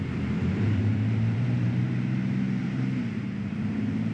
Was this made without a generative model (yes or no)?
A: no